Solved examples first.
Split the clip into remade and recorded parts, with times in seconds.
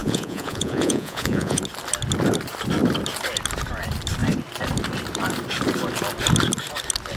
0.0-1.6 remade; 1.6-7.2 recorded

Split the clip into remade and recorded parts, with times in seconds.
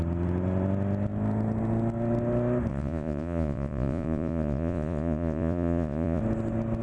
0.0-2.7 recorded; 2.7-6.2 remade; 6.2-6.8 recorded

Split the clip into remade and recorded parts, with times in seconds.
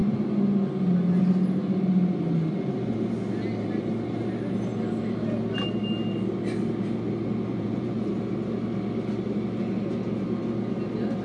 0.0-7.5 recorded; 7.5-8.1 remade; 8.1-11.2 recorded